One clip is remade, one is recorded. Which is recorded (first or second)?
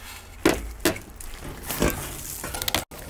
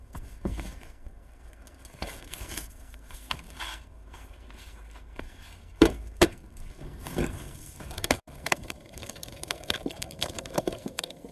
first